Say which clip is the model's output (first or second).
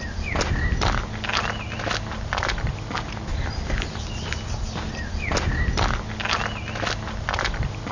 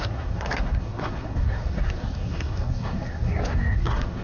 second